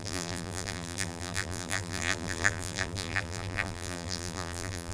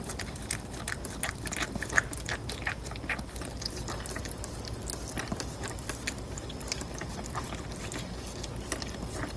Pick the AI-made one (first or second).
first